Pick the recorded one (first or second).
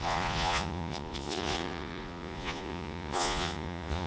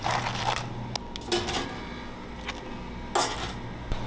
second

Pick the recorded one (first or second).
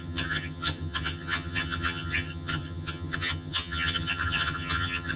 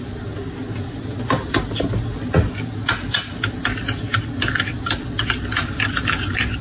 second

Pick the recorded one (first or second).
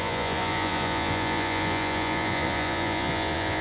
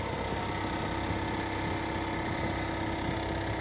second